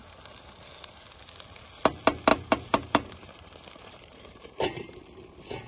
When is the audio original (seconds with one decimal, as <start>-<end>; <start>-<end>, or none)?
0.0-2.3; 4.9-5.7

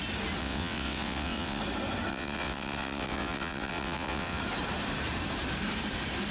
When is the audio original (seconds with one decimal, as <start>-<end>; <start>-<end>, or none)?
0.0-0.4; 1.6-2.1; 4.4-6.3

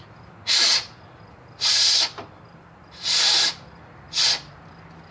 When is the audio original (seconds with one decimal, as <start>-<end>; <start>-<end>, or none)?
0.0-5.1

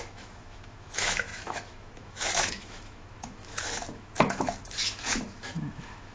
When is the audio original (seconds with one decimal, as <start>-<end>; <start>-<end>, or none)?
none

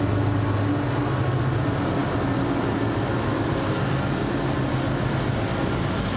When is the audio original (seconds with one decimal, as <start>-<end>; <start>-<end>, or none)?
0.0-6.2

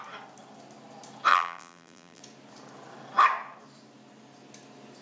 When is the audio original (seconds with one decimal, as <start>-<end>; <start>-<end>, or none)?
0.0-1.3; 2.2-5.0